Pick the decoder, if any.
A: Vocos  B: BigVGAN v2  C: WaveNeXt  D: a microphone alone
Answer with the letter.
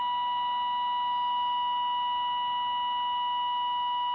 D